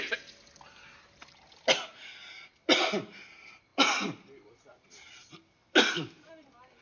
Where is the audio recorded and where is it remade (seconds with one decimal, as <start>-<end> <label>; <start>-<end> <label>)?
0.0-6.8 recorded